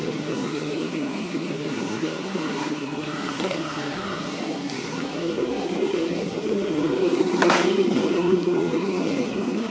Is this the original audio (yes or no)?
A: no